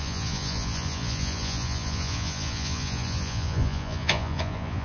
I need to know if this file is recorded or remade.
remade